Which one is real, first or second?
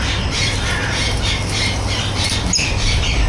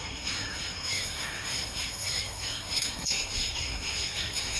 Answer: first